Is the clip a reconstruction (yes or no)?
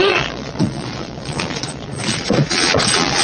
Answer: yes